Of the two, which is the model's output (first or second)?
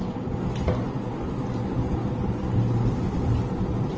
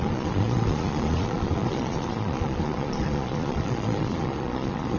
second